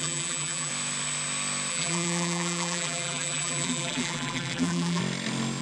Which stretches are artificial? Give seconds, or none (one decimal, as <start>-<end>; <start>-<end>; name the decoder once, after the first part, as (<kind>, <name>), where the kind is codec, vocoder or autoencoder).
0.0-0.7 (vocoder, BigVGAN v2); 1.7-5.0